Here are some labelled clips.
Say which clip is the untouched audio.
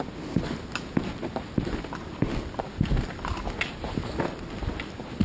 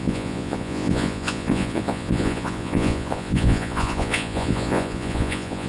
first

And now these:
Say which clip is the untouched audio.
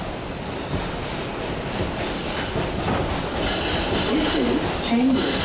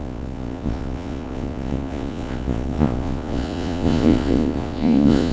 first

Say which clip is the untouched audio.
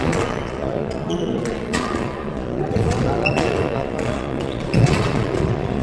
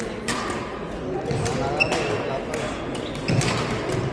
second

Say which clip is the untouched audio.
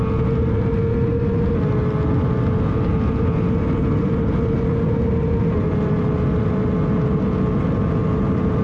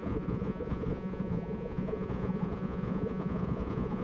first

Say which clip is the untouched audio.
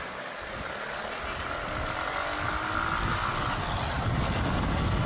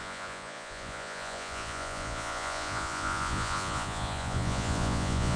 first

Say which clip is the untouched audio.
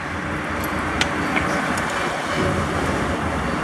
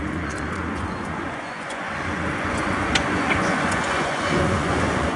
first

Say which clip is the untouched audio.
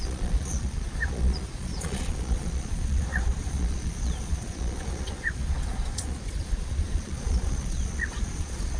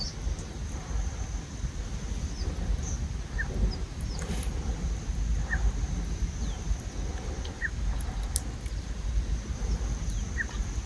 second